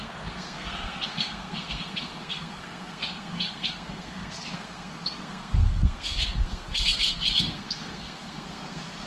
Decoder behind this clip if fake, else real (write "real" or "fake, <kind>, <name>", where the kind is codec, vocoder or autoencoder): fake, codec, SNAC